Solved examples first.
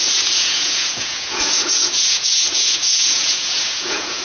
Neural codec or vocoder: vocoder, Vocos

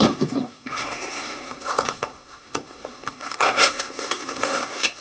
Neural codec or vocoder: codec, SNAC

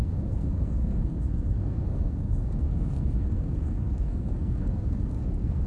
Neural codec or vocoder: codec, SNAC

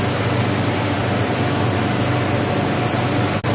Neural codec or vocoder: none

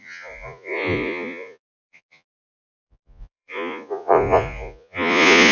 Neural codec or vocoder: vocoder, Vocos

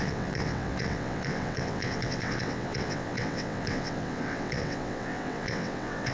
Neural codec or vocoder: vocoder, WaveNeXt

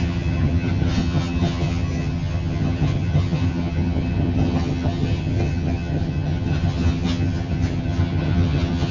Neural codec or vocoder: vocoder, HiFi-GAN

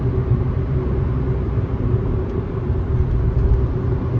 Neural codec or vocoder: none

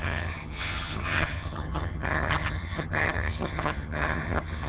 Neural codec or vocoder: vocoder, HiFi-GAN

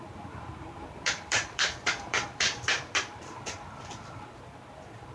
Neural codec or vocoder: vocoder, BigVGAN v2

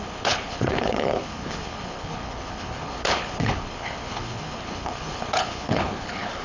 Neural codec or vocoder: codec, HILCodec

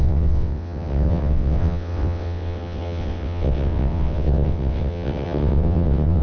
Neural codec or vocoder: vocoder, WaveNeXt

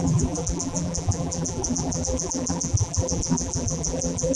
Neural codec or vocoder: vocoder, BigVGAN v2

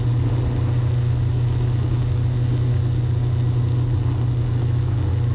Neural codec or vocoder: none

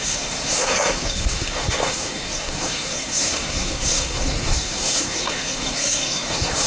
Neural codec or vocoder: codec, SNAC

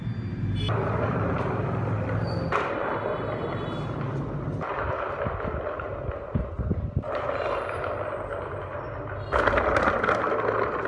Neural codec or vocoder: none